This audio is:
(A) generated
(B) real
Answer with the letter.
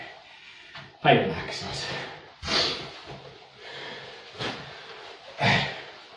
B